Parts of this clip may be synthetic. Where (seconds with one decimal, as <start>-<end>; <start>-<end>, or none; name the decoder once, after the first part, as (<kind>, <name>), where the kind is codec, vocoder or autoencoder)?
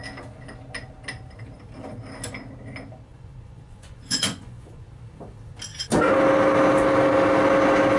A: 3.1-4.9 (vocoder, Vocos)